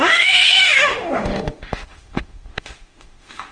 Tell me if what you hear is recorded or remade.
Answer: remade